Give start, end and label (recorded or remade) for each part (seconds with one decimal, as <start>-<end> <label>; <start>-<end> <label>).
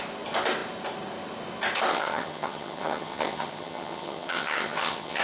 0.0-1.9 recorded; 1.9-5.2 remade